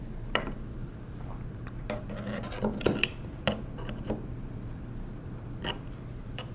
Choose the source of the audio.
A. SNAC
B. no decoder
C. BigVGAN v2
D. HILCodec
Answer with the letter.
C